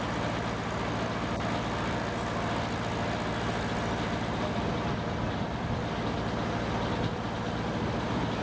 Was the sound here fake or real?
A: real